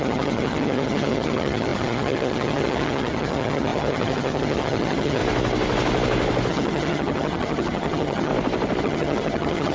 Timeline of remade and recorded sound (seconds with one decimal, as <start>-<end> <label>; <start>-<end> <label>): 0.0-5.2 remade; 5.2-6.5 recorded; 6.5-8.3 remade; 8.3-8.8 recorded; 8.8-9.7 remade